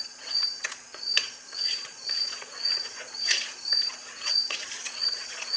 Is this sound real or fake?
fake